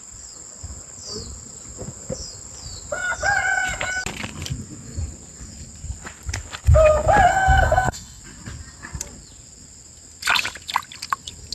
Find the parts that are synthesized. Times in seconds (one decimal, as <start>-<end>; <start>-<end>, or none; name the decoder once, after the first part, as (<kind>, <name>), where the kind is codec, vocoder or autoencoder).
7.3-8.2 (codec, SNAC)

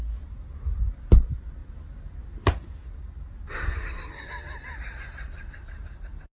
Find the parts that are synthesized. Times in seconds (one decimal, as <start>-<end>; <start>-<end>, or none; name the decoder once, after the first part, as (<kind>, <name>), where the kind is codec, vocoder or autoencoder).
none

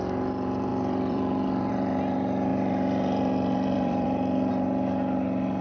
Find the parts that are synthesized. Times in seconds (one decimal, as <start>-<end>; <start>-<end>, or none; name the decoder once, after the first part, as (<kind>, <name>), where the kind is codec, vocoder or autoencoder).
0.7-1.7 (vocoder, BigVGAN v2); 2.5-4.5